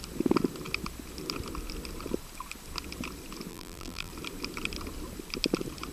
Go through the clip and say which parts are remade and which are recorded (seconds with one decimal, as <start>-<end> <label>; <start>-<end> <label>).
0.0-3.5 recorded; 3.5-4.1 remade; 4.1-5.9 recorded